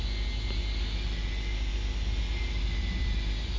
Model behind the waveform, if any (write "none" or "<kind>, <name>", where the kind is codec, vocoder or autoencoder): none